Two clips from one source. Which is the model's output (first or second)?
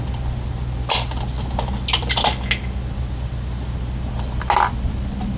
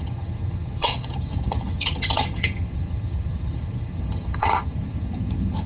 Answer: second